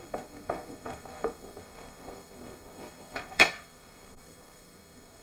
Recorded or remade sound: remade